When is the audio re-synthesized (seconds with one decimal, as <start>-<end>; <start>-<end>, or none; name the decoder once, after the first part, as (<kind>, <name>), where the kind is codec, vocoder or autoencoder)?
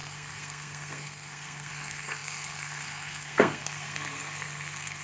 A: 0.0-5.0 (codec, SNAC)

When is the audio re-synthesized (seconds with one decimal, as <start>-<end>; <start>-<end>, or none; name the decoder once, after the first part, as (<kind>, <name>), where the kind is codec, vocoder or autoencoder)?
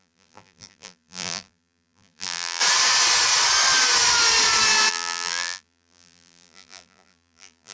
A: 0.0-2.6 (vocoder, BigVGAN v2); 4.9-7.7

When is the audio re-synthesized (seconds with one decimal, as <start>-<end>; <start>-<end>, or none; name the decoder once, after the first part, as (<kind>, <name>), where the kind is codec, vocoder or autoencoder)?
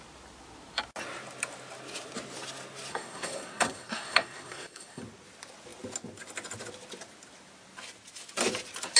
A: 2.9-5.0 (codec, SNAC)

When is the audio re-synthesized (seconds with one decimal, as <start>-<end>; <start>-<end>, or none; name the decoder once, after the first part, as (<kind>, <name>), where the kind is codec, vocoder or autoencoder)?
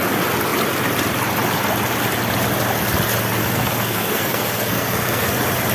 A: 3.4-5.3 (codec, SNAC)